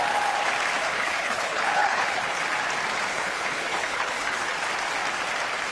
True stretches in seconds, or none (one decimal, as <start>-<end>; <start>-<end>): 0.0-0.9; 2.4-3.1; 4.5-5.7